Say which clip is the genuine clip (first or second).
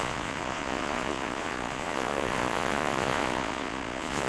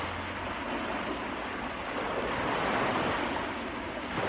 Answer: second